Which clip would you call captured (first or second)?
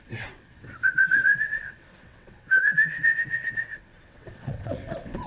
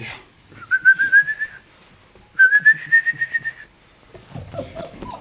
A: second